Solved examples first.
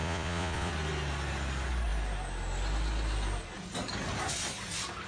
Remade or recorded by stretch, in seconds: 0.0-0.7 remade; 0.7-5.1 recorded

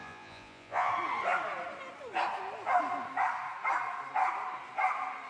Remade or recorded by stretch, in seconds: 0.0-0.9 remade; 0.9-5.3 recorded

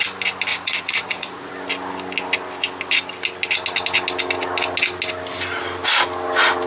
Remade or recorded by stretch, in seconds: 0.0-0.5 recorded; 0.5-1.5 remade; 1.5-6.7 recorded